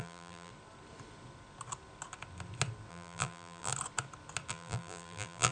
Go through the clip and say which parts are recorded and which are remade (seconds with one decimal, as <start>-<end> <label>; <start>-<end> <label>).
0.0-0.5 remade; 0.5-2.9 recorded; 2.9-3.7 remade; 3.7-4.5 recorded; 4.5-5.5 remade